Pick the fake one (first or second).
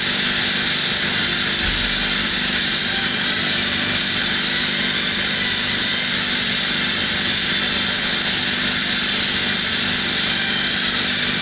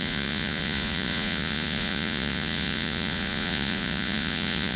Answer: second